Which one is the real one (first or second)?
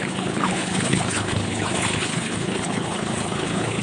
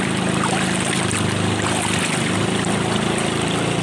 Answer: second